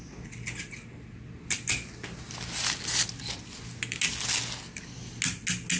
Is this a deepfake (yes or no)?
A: no